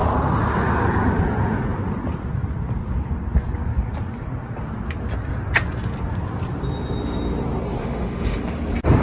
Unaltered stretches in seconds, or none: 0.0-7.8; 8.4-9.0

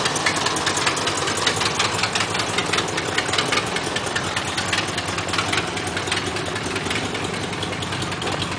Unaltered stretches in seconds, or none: 0.0-8.6

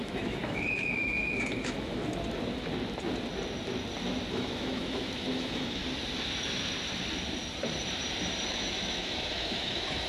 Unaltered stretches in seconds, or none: 2.0-4.3; 5.8-8.5

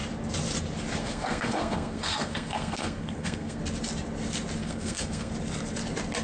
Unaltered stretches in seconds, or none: 0.0-1.0; 3.6-4.6; 5.3-6.2

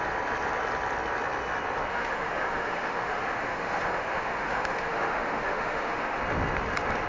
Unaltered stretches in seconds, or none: 0.0-1.9; 6.2-7.1